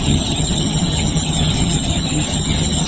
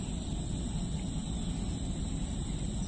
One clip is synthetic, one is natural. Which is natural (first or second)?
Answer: second